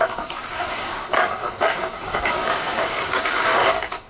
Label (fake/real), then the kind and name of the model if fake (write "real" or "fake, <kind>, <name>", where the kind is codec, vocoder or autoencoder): fake, codec, DAC